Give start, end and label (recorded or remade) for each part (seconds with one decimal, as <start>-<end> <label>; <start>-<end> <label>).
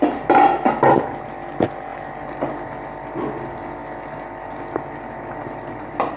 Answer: 0.0-6.2 recorded